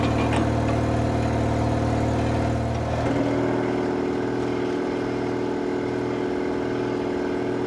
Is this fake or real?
real